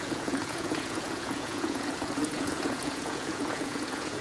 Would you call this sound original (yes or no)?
no